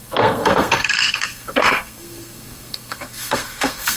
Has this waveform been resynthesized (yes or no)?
yes